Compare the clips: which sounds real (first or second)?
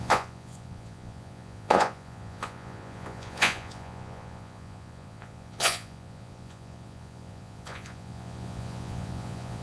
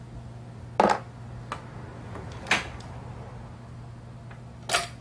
second